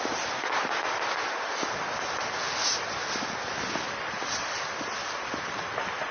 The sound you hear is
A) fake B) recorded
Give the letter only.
B